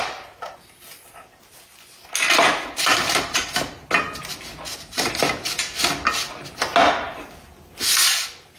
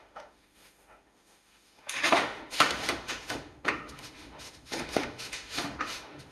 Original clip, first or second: first